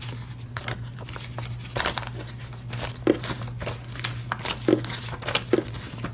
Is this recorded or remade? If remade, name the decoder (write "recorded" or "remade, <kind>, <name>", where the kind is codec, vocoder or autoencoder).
recorded